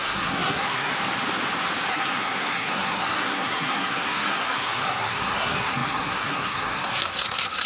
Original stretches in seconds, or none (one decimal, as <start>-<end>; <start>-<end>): 0.9-1.9